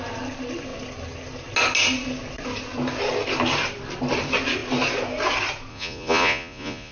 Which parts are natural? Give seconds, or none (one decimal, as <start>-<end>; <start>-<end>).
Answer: 0.0-5.7